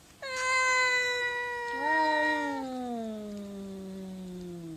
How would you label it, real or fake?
real